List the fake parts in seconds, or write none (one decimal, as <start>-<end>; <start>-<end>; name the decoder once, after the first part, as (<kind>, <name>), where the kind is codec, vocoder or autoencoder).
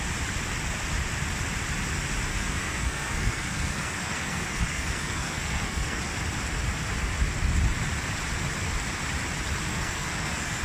2.3-6.0 (codec, SNAC); 9.7-10.6